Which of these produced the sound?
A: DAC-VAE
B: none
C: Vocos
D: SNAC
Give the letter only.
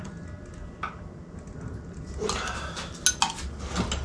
B